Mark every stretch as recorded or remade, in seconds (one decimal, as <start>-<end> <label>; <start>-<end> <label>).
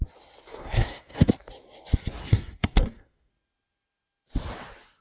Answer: 0.0-0.5 recorded; 0.5-1.3 remade; 1.3-2.2 recorded; 2.2-3.3 remade; 3.3-5.0 recorded